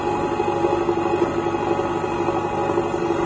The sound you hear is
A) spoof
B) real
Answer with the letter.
B